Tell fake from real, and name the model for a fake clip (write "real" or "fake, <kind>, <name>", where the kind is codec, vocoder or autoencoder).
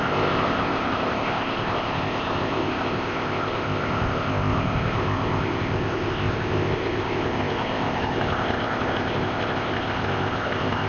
fake, codec, ZipCodec